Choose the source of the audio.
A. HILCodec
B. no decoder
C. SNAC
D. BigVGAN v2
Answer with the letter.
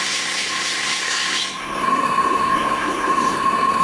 C